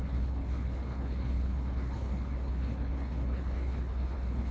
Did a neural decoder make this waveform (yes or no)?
yes